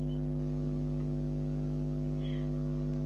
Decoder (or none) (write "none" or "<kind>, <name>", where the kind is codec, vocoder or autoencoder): none